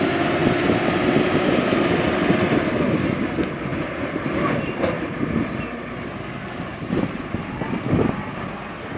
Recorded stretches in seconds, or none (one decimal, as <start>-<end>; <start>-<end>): 0.0-3.7; 4.5-6.7; 7.2-9.0